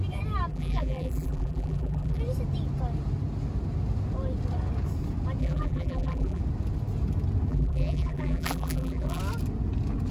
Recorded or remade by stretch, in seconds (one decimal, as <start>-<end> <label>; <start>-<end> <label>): 0.0-0.5 recorded; 0.5-2.2 remade; 2.2-5.4 recorded; 5.4-6.4 remade; 6.4-7.5 recorded; 7.5-9.2 remade; 9.2-10.1 recorded